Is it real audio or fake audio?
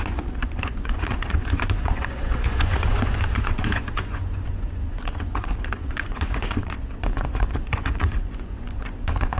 fake